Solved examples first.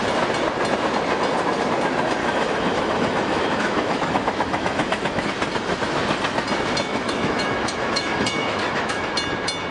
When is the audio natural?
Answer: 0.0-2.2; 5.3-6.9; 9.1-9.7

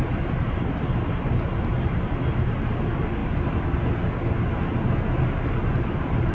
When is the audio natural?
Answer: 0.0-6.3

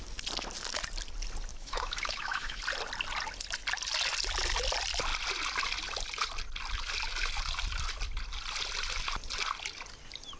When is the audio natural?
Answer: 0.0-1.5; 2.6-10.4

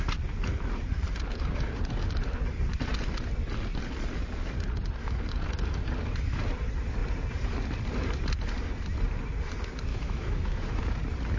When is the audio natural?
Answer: 0.0-9.9; 10.8-11.4

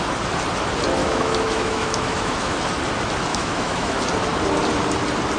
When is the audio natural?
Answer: 0.0-1.0; 2.6-3.3; 4.0-5.4

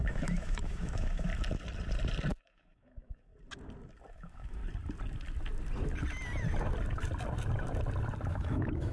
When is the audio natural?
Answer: 1.3-2.4; 3.3-4.1; 4.6-8.3

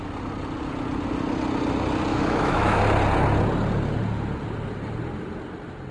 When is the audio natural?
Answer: 0.0-2.1; 2.8-5.9

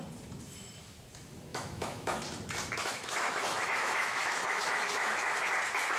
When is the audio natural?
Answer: 0.0-1.5; 2.2-2.8; 5.5-6.0